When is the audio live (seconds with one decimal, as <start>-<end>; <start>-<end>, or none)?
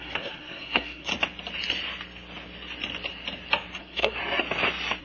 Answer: 1.1-3.8; 4.2-5.0